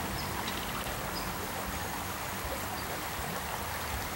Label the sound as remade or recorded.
recorded